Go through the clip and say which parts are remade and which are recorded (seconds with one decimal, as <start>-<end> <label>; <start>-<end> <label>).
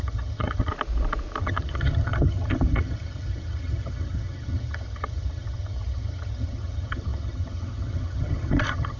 0.0-0.7 remade; 0.7-1.4 recorded; 1.4-9.0 remade